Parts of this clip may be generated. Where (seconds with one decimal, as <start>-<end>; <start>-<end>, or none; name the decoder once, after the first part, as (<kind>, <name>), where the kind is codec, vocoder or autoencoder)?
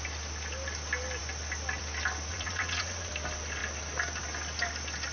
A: 2.3-3.1 (vocoder, Vocos)